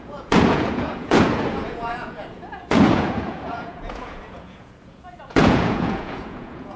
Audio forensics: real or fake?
fake